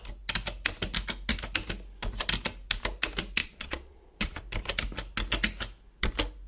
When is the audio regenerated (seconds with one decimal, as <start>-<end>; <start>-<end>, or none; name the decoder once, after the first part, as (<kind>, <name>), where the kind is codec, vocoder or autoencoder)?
3.4-4.4 (vocoder, Vocos)